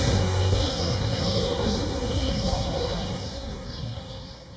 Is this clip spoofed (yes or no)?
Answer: yes